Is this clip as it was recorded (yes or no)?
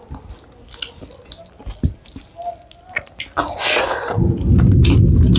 yes